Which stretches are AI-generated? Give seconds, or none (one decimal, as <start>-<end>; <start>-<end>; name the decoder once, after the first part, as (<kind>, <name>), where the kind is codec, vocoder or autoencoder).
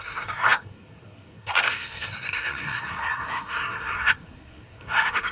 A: 0.0-5.3 (codec, SNAC)